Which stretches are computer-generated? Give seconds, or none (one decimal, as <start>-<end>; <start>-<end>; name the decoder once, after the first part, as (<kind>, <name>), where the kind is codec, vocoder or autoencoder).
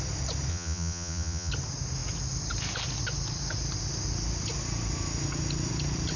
0.5-1.5 (vocoder, Vocos)